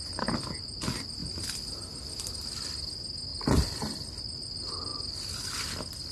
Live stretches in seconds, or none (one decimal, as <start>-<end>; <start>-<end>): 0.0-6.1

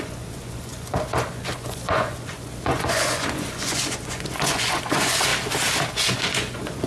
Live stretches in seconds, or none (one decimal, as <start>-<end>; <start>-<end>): 5.3-5.9

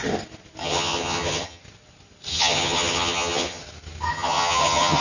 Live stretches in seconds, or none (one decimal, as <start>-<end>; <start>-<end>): 0.0-0.6; 1.6-2.3; 3.6-4.1